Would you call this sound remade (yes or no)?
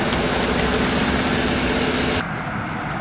no